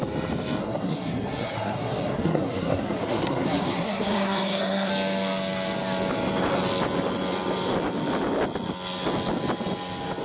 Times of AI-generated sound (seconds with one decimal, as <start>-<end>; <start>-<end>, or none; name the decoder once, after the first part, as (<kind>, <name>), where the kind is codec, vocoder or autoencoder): 0.6-4.9 (codec, SNAC)